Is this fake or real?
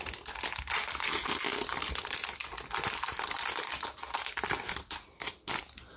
real